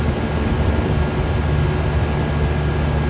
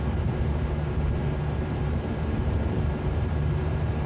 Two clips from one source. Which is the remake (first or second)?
second